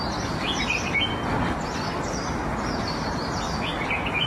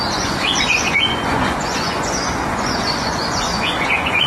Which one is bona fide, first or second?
first